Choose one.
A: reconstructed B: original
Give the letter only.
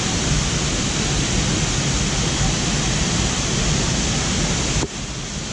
B